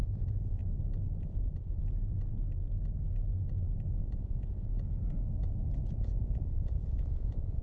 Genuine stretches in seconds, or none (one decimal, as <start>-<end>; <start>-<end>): 0.6-1.2; 1.8-4.0; 4.7-5.9